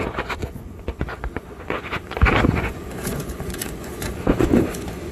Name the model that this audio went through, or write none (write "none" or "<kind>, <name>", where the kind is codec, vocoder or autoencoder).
vocoder, Vocos